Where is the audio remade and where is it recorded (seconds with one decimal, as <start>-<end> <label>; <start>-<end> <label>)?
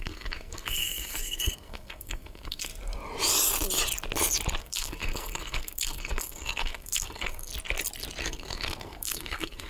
0.0-2.7 remade; 2.7-4.6 recorded; 4.6-7.5 remade; 7.5-8.2 recorded; 8.2-9.7 remade